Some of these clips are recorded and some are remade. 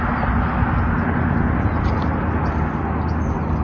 recorded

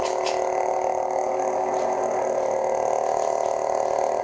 recorded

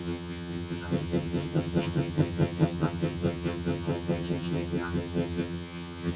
remade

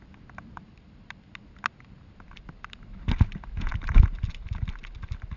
recorded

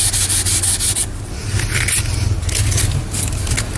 recorded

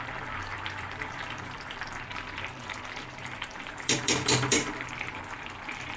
remade